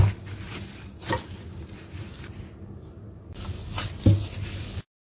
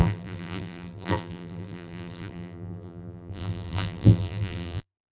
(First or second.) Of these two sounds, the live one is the first